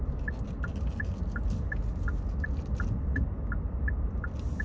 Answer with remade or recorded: recorded